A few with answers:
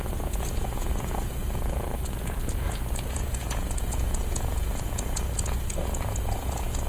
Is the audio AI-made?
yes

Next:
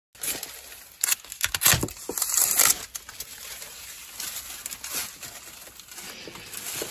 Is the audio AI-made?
no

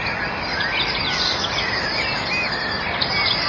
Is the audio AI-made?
no